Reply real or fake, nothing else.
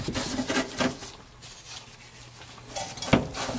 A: real